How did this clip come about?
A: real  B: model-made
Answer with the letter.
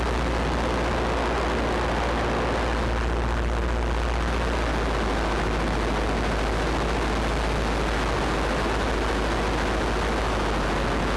A